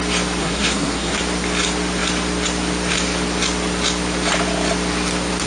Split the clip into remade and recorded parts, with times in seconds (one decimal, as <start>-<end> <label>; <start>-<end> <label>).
0.0-0.4 recorded; 0.4-1.2 remade; 1.2-5.5 recorded